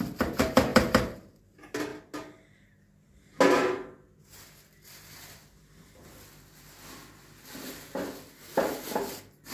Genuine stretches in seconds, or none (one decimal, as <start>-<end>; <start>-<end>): 0.0-9.5